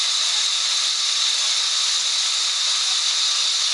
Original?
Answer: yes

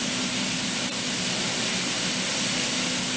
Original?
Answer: yes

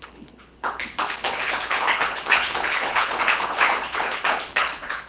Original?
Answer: no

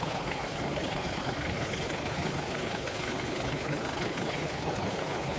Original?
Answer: no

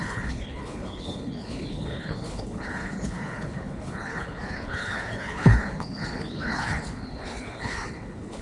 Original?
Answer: no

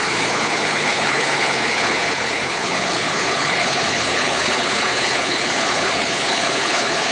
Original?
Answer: no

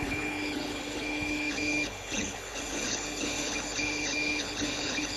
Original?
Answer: no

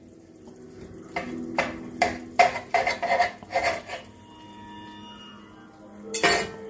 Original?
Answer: yes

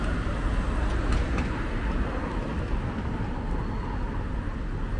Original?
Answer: yes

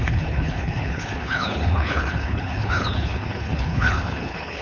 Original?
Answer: no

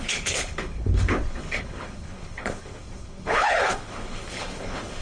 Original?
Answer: no